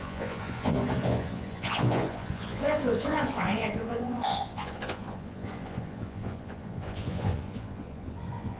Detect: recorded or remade remade